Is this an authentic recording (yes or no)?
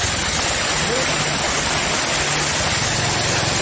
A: yes